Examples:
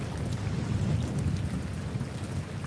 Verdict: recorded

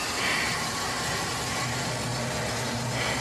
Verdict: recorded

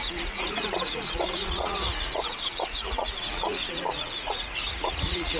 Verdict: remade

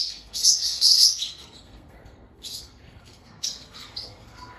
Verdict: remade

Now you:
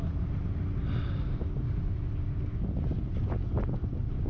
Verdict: recorded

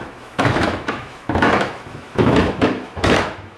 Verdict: remade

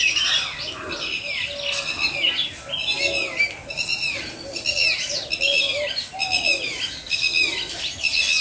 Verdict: recorded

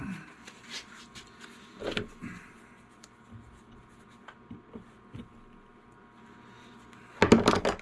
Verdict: recorded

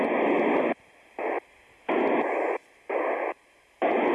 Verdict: recorded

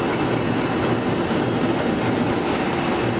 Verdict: recorded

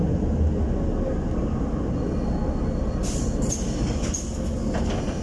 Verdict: recorded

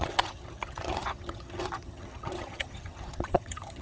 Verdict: remade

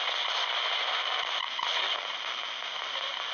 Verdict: recorded